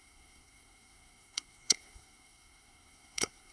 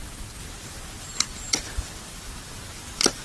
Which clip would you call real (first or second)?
second